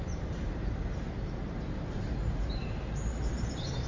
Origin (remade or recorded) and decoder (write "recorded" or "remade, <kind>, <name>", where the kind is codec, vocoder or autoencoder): remade, vocoder, BigVGAN v2